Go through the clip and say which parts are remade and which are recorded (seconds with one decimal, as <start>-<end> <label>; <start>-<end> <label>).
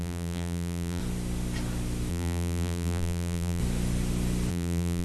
0.0-1.0 remade; 1.0-2.1 recorded; 2.1-3.6 remade; 3.6-4.5 recorded; 4.5-5.0 remade